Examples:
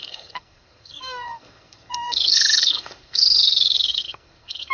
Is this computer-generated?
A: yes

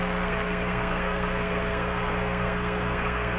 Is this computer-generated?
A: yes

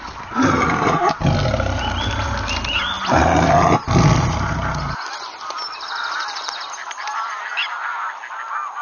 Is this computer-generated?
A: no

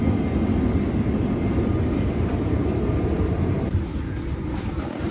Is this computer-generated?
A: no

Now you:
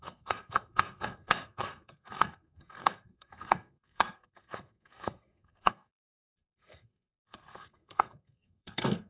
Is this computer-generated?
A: yes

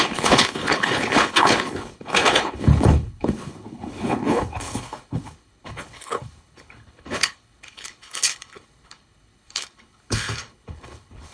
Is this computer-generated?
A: yes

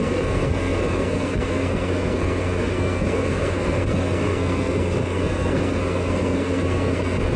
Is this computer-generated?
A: yes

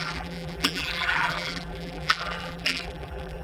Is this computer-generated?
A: yes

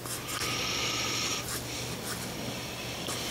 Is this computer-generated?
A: no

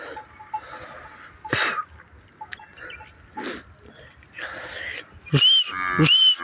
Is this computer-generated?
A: no